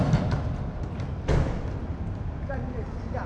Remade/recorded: recorded